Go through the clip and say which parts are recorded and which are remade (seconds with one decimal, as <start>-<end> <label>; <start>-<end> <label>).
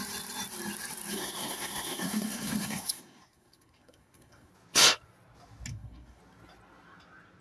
0.0-1.1 recorded; 1.1-4.5 remade; 4.5-5.7 recorded; 5.7-6.2 remade; 6.2-7.4 recorded